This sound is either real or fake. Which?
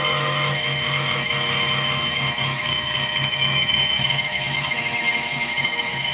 fake